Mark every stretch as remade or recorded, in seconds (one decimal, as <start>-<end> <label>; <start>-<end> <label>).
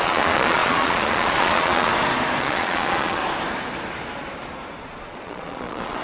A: 0.0-1.9 remade; 1.9-2.4 recorded; 2.4-3.2 remade; 3.2-4.8 recorded; 4.8-6.0 remade